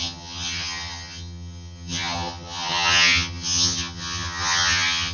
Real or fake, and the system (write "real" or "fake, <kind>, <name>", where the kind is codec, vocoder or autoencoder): fake, vocoder, HiFi-GAN